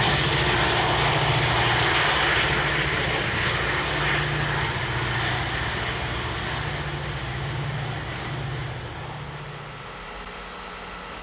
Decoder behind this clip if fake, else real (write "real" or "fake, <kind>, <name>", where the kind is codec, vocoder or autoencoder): real